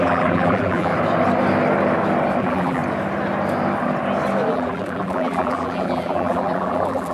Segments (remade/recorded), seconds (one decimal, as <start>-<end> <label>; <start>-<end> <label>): 0.0-0.9 remade; 0.9-2.4 recorded; 2.4-2.8 remade; 2.8-4.5 recorded; 4.5-7.1 remade